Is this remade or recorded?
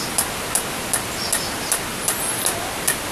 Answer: recorded